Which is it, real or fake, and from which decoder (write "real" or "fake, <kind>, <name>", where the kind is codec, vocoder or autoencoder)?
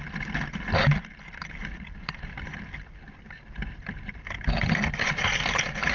real